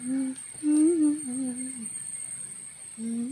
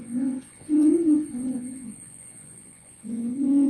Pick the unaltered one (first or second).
first